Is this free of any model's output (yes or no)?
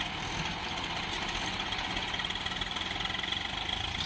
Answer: yes